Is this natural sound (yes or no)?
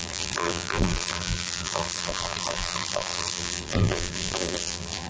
no